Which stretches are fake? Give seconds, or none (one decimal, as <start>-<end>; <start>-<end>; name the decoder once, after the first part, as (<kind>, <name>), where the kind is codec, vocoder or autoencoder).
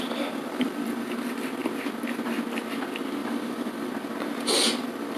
3.2-3.9 (vocoder, BigVGAN v2)